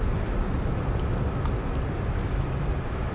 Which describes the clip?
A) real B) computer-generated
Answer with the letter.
B